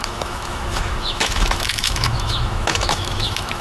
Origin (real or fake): fake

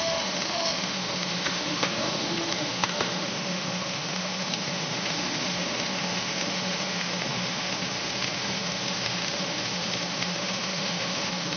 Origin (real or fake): fake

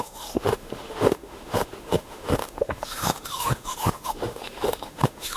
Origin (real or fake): fake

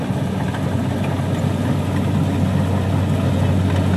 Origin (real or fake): real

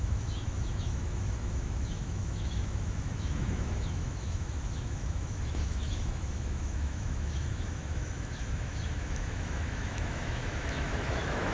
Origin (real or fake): fake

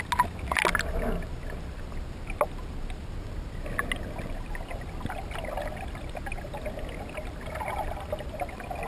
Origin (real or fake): real